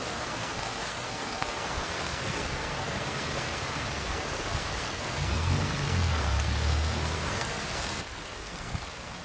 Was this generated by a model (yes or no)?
yes